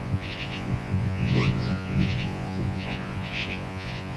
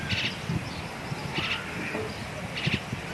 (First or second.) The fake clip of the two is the first